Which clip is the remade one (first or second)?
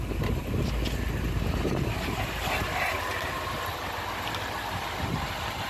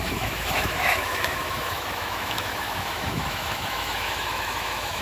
second